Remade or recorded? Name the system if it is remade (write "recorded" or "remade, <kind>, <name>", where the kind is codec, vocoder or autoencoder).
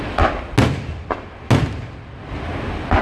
recorded